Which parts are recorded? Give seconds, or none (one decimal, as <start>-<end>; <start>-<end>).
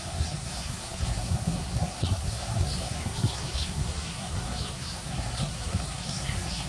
none